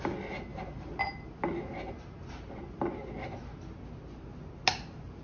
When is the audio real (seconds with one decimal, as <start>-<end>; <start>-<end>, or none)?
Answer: 0.0-5.2